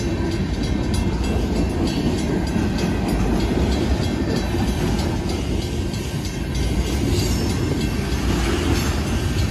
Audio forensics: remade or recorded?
recorded